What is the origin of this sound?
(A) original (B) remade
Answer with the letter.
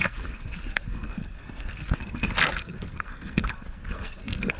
B